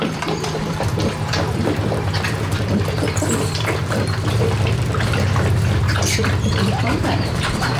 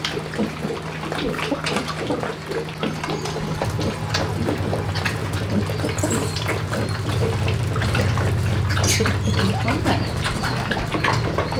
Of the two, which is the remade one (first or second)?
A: first